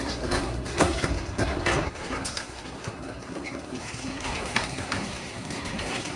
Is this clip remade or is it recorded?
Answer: remade